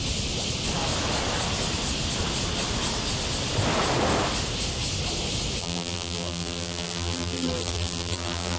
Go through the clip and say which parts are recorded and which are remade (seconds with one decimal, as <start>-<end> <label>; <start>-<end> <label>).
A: 0.0-5.6 recorded; 5.6-8.6 remade